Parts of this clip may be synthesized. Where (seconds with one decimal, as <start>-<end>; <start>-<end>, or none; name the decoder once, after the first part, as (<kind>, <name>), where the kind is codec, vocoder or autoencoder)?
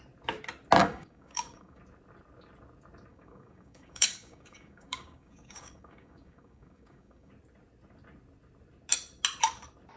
0.8-1.8 (codec, DAC); 3.1-7.3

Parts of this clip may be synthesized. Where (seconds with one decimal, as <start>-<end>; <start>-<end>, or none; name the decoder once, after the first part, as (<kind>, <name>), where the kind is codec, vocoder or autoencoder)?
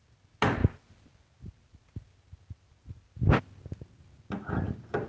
none